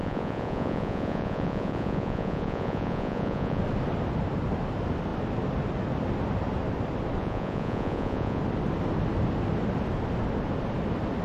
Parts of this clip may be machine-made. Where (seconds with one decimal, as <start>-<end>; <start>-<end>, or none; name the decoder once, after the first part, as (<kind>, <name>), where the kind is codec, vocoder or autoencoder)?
0.0-3.6 (vocoder, Vocos); 7.2-8.4